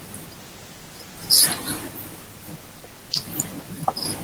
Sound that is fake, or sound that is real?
real